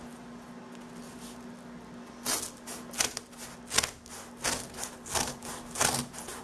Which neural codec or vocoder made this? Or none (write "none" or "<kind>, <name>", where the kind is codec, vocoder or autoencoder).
none